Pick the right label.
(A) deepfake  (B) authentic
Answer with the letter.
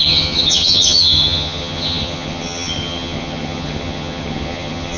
A